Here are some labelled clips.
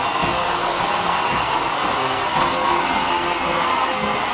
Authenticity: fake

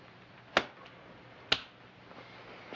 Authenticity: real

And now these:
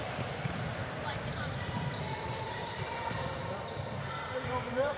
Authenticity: fake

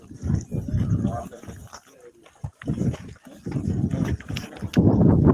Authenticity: real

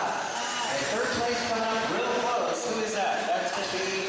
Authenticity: real